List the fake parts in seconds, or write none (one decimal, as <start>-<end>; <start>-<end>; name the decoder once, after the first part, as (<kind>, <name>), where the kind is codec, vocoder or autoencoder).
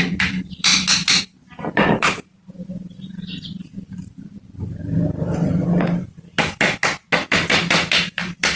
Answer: 0.0-0.7 (vocoder, BigVGAN v2); 1.2-5.6